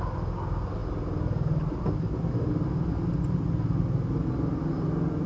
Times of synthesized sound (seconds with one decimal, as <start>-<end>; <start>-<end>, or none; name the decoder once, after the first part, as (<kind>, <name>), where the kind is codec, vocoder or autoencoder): none